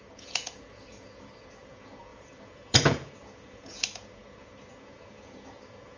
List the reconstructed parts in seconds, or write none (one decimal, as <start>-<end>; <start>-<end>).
0.0-6.0